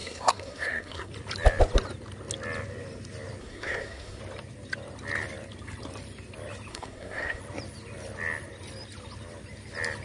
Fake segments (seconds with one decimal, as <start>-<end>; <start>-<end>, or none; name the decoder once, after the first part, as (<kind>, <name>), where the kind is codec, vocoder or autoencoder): 0.0-1.1 (codec, SNAC); 3.4-4.2; 6.7-7.4